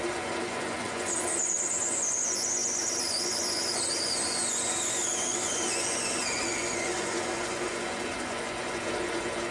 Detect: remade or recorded remade